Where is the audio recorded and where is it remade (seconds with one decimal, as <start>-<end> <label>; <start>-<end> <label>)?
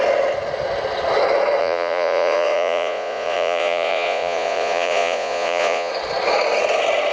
0.0-1.6 recorded; 1.6-5.9 remade; 5.9-7.1 recorded